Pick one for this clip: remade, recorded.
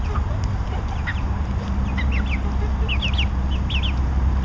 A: recorded